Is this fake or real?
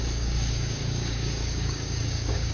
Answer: fake